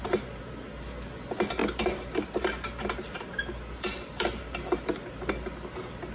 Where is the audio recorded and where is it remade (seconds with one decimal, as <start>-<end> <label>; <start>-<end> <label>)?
0.0-6.1 recorded